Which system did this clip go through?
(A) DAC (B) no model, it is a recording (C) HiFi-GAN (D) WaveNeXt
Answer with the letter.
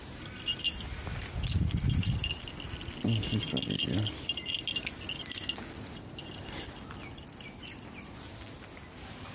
B